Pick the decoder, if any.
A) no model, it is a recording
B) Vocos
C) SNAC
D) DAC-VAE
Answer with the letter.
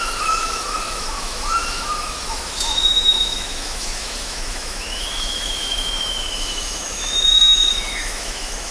D